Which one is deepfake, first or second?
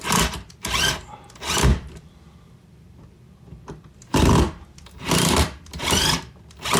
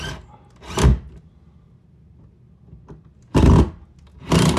first